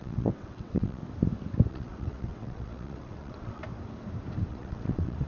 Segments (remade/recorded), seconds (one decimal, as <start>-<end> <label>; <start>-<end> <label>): 0.0-1.0 remade; 1.0-1.7 recorded; 1.7-3.6 remade; 3.6-4.5 recorded; 4.5-5.3 remade